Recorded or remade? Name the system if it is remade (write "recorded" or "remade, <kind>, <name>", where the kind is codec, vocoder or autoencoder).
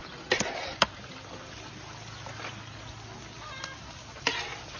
recorded